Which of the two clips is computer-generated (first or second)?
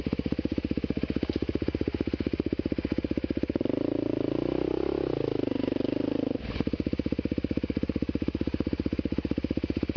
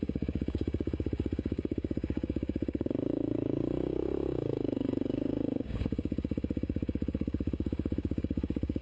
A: second